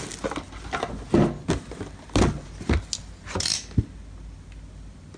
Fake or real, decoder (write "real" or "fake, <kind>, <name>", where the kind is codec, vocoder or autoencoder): real